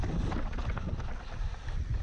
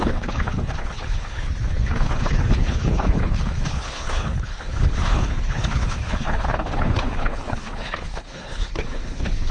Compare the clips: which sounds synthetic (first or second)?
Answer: second